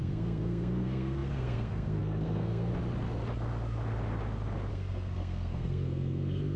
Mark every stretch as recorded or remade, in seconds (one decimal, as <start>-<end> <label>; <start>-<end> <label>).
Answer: 0.0-2.7 remade; 2.7-4.7 recorded; 4.7-6.6 remade

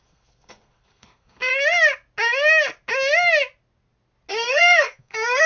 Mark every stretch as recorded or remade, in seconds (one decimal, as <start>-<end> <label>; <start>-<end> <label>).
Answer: 0.0-1.5 remade; 1.5-4.3 recorded; 4.3-5.5 remade

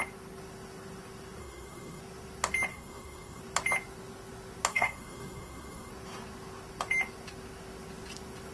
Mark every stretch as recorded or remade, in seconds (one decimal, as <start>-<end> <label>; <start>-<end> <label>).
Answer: 0.0-1.4 recorded; 1.4-2.0 remade; 2.0-2.7 recorded; 2.7-3.4 remade; 3.4-4.7 recorded; 4.7-5.9 remade; 5.9-8.5 recorded

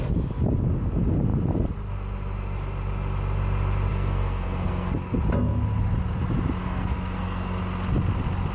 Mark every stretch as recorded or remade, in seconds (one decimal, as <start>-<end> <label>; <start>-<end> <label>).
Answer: 0.0-3.9 recorded; 3.9-4.9 remade; 4.9-6.6 recorded; 6.6-7.6 remade; 7.6-8.5 recorded

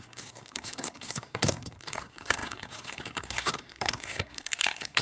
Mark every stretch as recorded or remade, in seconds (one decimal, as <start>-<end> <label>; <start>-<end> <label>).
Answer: 0.0-5.0 remade

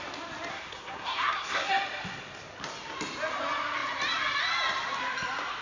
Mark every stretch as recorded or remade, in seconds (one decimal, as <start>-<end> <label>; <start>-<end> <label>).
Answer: 0.0-0.5 recorded; 0.5-1.7 remade; 1.7-5.6 recorded